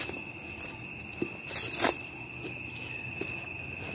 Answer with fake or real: real